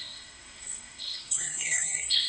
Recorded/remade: remade